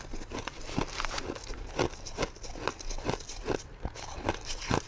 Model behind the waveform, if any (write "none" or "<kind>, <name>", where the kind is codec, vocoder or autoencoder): none